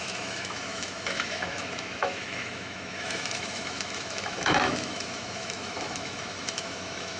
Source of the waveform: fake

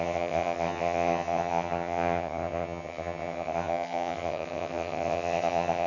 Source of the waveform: fake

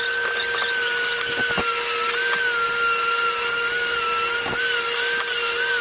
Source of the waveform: real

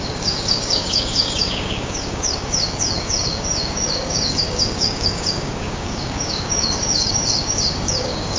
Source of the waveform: fake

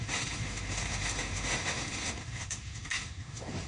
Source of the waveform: fake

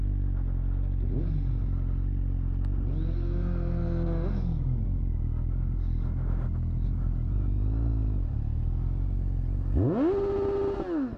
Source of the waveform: real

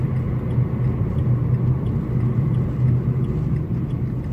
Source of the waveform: real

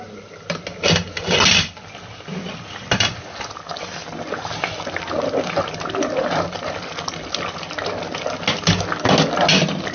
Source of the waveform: real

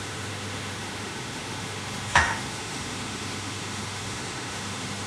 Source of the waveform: fake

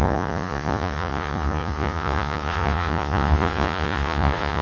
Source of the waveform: fake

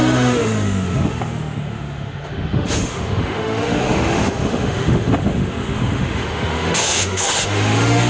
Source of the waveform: fake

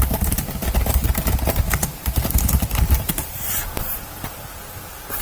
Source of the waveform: real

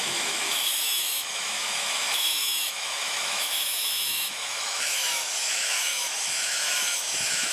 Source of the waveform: fake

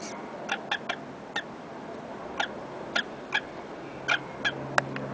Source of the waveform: real